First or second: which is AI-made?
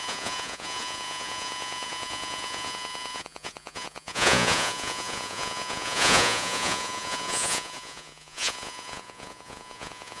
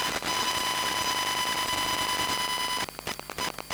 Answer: first